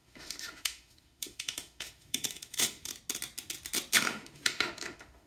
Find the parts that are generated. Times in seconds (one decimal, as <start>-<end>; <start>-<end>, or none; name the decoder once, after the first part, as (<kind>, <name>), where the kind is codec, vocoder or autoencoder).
0.0-2.9 (autoencoder, DAC-VAE); 3.9-5.3

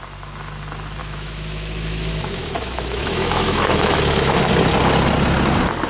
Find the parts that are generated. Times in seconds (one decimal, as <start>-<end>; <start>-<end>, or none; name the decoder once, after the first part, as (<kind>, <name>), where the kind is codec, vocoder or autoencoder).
1.0-4.5 (autoencoder, DAC-VAE)

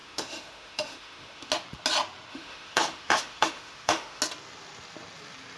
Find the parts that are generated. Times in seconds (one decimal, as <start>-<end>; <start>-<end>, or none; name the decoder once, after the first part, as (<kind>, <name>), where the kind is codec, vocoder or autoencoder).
0.0-1.5 (autoencoder, DAC-VAE); 2.3-4.2

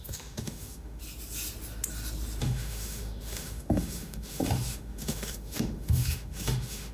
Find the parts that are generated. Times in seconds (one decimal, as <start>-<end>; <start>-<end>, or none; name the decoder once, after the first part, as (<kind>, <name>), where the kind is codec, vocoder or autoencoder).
0.0-1.0 (autoencoder, DAC-VAE); 2.4-6.9

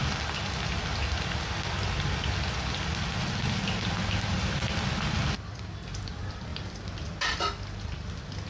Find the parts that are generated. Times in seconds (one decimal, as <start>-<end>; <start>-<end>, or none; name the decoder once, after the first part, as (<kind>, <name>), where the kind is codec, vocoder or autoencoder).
none